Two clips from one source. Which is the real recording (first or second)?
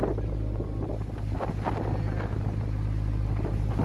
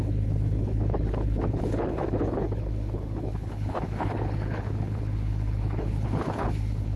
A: first